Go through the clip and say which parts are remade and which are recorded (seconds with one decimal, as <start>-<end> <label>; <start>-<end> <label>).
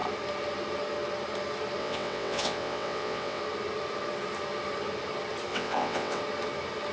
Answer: 0.0-1.8 recorded; 1.8-3.4 remade; 3.4-5.5 recorded; 5.5-6.2 remade; 6.2-6.9 recorded